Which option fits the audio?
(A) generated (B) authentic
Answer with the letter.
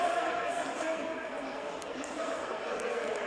A